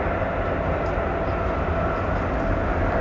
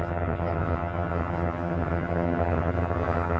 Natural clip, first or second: first